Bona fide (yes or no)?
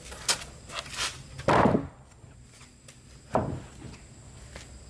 yes